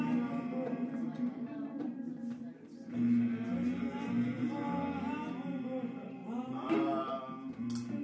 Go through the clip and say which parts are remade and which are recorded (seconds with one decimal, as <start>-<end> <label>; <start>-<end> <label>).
0.0-1.0 recorded; 1.0-4.8 remade; 4.8-6.2 recorded; 6.2-7.2 remade; 7.2-8.0 recorded